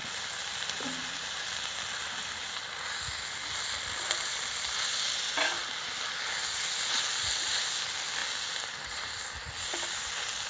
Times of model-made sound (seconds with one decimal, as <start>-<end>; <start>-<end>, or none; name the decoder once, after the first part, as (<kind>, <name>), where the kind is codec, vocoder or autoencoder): none